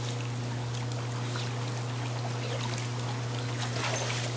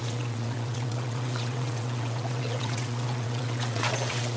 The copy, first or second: second